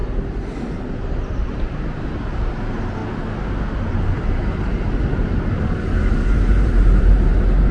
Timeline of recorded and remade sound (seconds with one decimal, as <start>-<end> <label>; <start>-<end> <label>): 0.0-1.3 recorded; 1.3-3.0 remade; 3.0-5.5 recorded; 5.5-7.7 remade